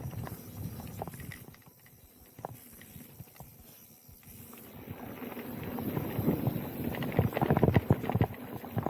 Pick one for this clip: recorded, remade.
recorded